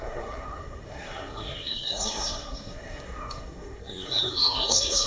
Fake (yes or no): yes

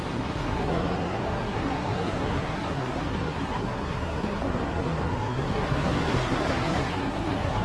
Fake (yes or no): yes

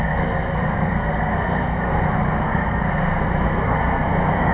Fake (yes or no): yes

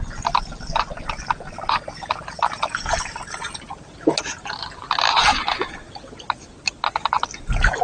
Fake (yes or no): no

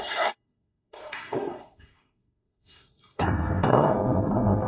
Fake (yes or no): yes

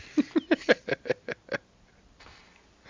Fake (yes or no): no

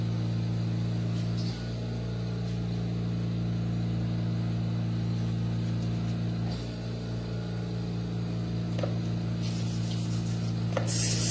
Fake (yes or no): no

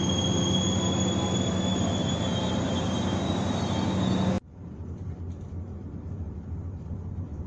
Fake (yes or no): no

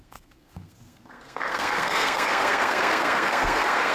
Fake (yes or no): yes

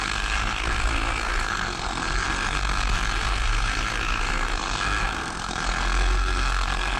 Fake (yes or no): yes